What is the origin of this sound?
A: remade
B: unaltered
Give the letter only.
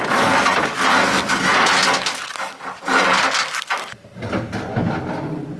B